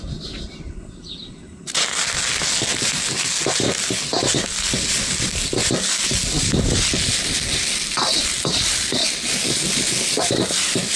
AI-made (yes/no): no